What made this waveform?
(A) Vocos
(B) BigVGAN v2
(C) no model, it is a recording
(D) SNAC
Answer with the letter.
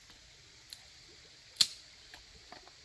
C